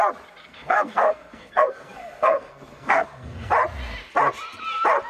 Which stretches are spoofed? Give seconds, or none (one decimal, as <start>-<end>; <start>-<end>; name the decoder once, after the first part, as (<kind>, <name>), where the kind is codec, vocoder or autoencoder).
0.4-3.5 (codec, SNAC)